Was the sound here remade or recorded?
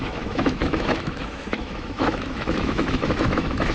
remade